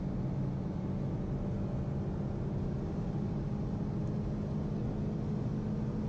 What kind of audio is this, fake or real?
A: real